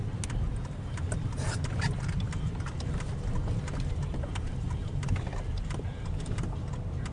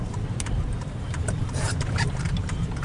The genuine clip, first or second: first